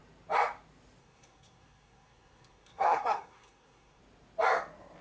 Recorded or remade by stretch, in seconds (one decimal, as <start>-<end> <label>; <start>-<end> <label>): 0.0-1.0 recorded; 1.0-4.0 remade; 4.0-5.0 recorded